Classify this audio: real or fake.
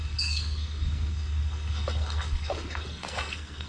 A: fake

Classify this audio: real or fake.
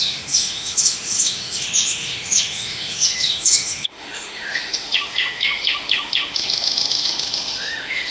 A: fake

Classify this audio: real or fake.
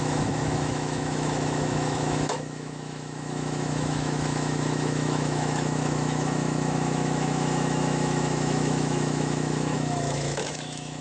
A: fake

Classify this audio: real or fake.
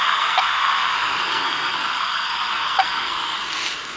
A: fake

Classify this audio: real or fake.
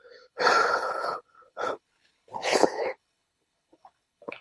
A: fake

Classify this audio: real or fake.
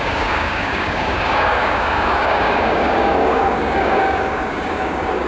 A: fake